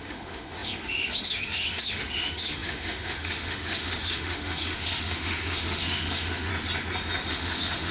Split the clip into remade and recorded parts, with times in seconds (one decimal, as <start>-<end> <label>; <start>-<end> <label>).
0.0-6.5 remade; 6.5-7.3 recorded; 7.3-7.9 remade